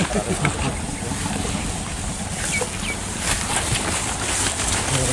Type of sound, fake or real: real